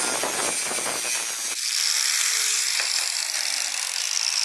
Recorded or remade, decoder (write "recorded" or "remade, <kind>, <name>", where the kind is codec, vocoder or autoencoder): recorded